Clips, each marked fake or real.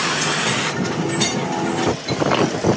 real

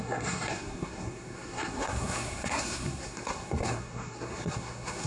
fake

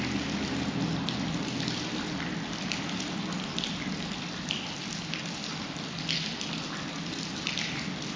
real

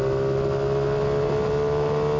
real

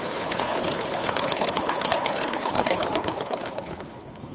fake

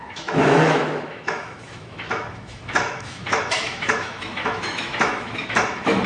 fake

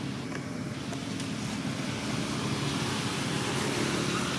real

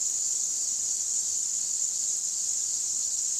real